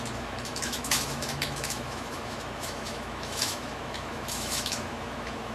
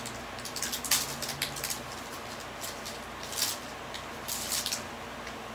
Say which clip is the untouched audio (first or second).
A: second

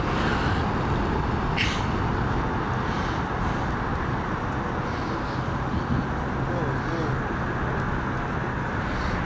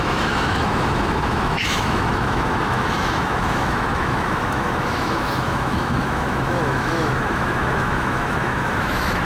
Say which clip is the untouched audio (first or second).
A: first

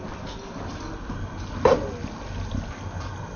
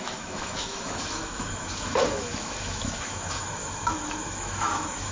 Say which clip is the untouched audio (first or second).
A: first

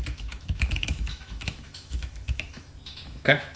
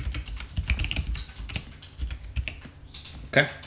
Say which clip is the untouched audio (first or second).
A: second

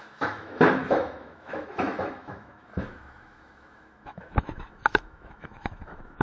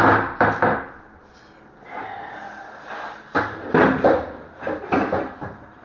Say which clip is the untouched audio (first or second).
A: second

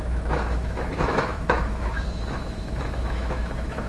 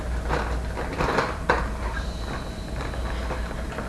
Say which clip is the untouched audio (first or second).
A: second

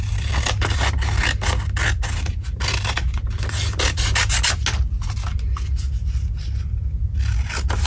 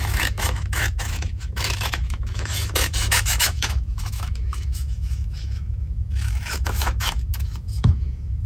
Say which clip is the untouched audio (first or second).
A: first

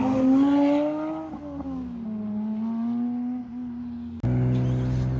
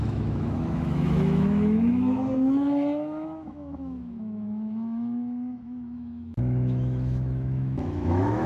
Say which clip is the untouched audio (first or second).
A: first